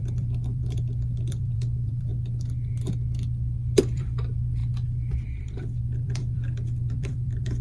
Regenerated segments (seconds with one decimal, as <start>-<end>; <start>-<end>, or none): 0.0-2.1; 3.8-7.6

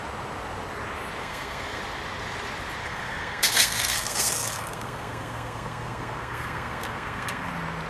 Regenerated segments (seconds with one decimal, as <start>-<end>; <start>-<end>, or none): 1.2-1.8; 2.8-7.5

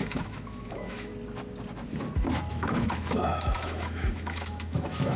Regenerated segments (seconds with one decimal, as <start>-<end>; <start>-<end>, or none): 0.0-1.1; 2.5-5.2

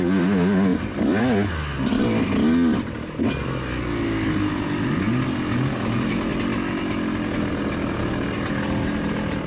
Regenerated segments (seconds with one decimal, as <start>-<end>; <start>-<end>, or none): none